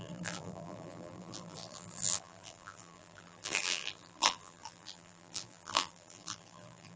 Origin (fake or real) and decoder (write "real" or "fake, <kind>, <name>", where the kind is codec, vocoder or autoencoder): fake, vocoder, BigVGAN v2